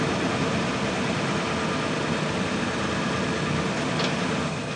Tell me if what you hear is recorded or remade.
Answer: recorded